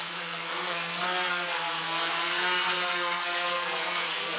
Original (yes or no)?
no